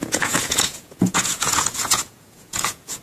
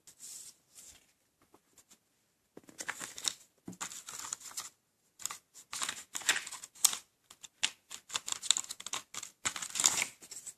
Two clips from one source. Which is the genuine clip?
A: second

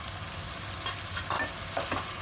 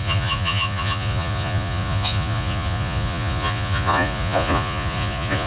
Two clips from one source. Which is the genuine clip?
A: first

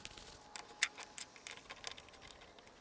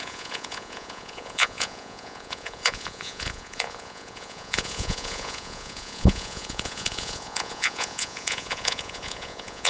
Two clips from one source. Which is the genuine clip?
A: first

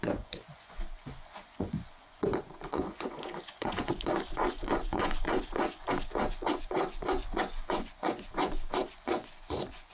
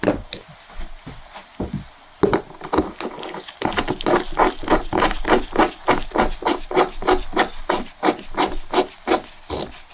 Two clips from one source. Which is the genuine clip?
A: second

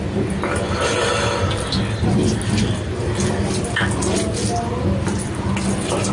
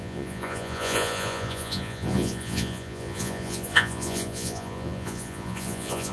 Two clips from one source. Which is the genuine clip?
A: first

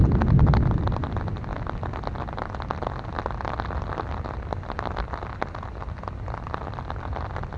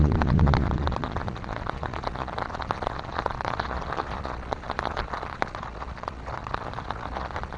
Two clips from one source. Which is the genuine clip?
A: first